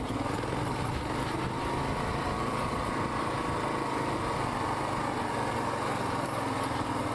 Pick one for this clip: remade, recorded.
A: recorded